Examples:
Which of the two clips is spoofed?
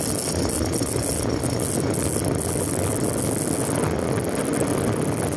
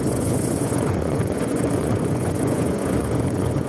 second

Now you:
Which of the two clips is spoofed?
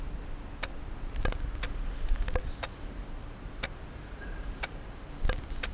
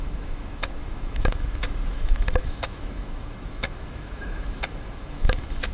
second